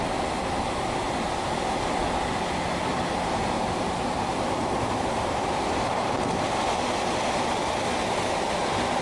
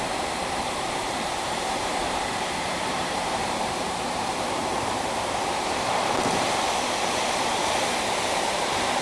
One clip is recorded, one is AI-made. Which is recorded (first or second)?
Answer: first